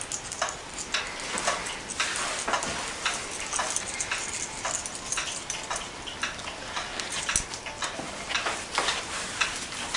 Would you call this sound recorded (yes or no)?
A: yes